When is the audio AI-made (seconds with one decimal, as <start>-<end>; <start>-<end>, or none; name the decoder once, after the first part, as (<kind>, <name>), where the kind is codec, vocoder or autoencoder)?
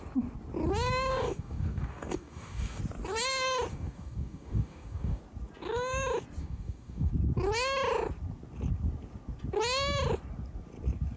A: 1.1-2.8 (codec, DAC); 3.7-5.2; 6.4-7.1